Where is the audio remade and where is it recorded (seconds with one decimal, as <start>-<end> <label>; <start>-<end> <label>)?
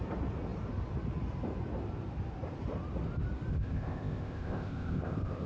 0.0-3.5 recorded; 3.5-5.5 remade